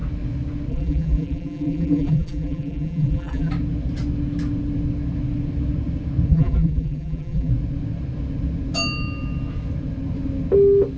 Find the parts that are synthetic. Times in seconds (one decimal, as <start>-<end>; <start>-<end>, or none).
0.7-3.5; 6.3-7.5